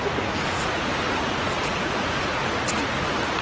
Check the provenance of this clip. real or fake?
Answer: fake